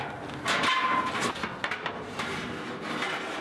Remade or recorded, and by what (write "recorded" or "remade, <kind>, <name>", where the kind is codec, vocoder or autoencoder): recorded